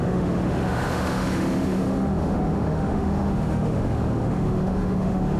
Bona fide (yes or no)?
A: no